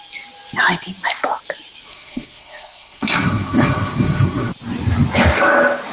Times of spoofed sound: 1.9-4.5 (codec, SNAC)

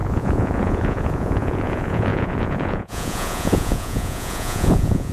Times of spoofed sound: 0.0-5.1 (vocoder, Vocos)

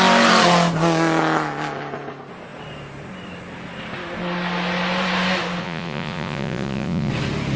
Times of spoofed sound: 5.6-7.1 (vocoder, Vocos)

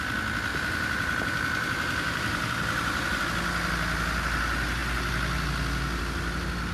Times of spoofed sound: 0.5-3.2 (vocoder, BigVGAN v2)